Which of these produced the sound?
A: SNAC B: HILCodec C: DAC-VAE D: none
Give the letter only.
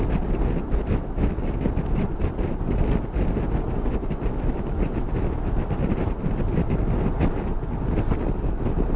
D